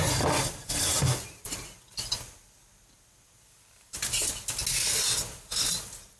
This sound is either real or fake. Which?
real